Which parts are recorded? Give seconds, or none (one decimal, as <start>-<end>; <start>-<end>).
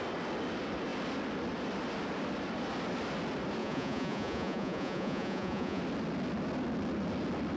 0.0-3.6; 5.8-7.6